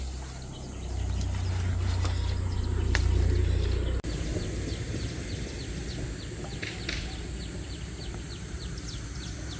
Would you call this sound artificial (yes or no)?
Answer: no